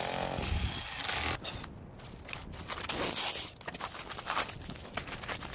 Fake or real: real